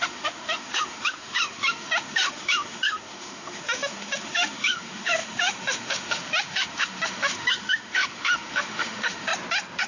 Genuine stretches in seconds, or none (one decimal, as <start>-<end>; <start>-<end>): 9.3-9.9